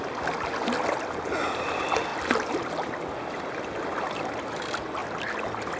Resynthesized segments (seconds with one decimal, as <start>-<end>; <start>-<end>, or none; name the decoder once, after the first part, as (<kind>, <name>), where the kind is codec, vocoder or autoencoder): none